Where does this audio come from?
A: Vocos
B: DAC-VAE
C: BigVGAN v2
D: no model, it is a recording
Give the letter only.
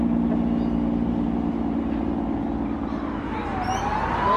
D